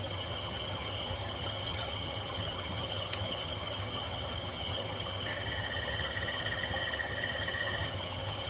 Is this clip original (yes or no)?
no